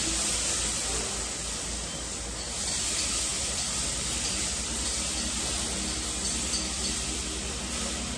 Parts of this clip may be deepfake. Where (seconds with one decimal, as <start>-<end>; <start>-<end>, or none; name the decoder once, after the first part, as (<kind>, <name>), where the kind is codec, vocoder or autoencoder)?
3.3-5.6 (vocoder, BigVGAN v2)